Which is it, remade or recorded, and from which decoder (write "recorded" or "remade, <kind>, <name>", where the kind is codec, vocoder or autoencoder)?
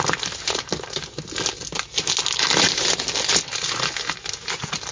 recorded